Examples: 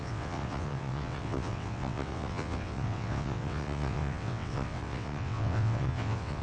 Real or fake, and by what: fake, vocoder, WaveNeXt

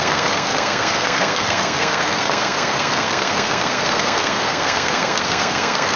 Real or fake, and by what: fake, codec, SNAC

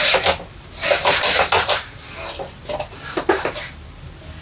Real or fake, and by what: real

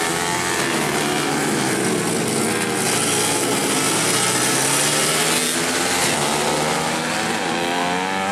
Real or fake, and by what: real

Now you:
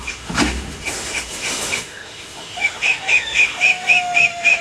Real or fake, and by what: fake, autoencoder, DAC-VAE